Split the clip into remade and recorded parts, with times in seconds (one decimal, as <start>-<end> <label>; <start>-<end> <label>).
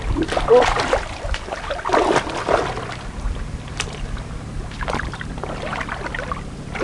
0.0-6.8 recorded